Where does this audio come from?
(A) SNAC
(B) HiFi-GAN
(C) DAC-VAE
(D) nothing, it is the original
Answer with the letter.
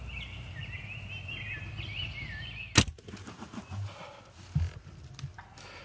D